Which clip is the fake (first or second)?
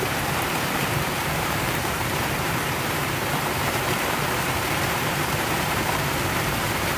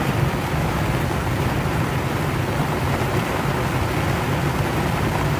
first